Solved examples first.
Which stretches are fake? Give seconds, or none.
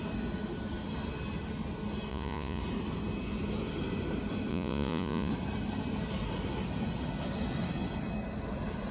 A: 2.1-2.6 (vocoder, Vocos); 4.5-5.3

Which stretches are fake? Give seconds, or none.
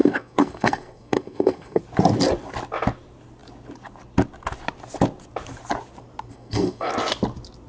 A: 0.0-1.8 (codec, SNAC); 6.3-6.9